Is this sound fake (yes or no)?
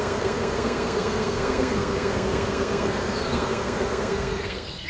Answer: yes